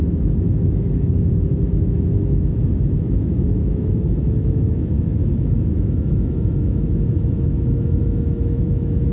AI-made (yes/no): yes